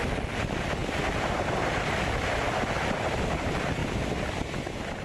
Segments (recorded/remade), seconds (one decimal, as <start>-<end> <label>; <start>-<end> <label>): 0.0-5.0 recorded